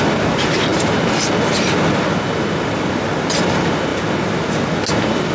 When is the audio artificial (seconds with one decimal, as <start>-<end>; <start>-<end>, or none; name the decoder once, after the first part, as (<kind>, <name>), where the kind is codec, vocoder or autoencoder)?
none

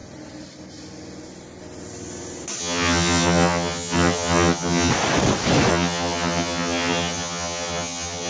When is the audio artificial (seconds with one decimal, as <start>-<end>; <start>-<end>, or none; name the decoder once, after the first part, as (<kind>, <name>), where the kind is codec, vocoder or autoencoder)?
2.6-4.9 (vocoder, HiFi-GAN); 5.7-8.3